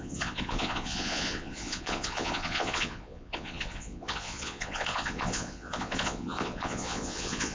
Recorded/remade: remade